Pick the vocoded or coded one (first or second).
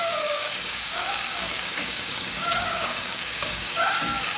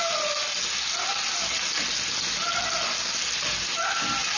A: first